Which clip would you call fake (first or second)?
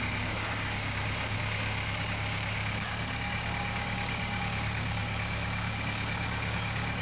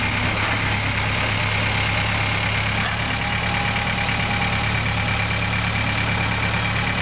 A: first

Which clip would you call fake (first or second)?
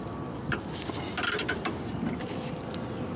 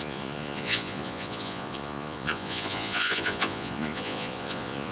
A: second